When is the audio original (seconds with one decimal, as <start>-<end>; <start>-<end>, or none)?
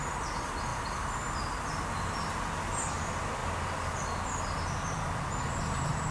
0.0-6.1